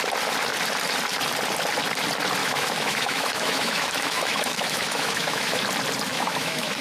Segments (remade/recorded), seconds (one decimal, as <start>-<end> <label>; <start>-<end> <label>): 0.0-2.4 recorded; 2.4-5.6 remade; 5.6-6.1 recorded; 6.1-6.8 remade